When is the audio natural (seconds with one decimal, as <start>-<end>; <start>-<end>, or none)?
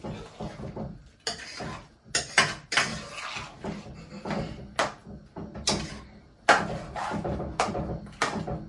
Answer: 0.0-8.7